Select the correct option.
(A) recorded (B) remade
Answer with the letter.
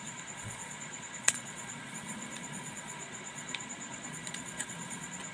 B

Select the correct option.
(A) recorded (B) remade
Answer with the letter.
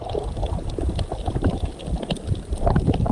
A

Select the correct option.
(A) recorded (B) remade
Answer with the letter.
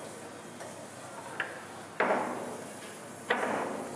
A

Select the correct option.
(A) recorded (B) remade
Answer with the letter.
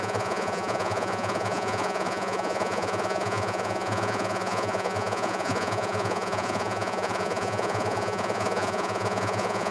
B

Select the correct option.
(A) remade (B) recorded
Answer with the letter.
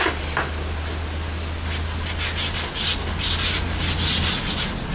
B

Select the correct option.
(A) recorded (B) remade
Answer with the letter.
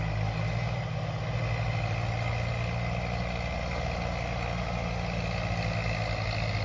A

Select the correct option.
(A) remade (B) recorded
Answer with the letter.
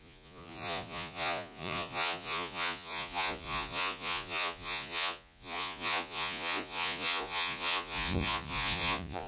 A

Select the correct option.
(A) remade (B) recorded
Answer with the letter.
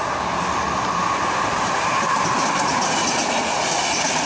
B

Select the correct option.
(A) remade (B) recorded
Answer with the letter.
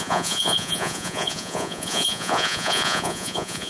A